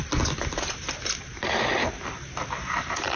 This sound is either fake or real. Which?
real